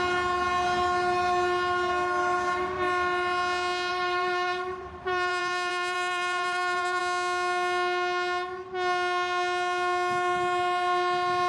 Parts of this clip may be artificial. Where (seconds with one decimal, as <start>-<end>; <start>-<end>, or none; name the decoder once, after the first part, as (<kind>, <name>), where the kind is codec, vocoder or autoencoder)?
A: 3.9-7.0 (vocoder, BigVGAN v2)